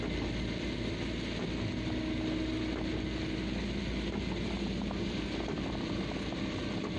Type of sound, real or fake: real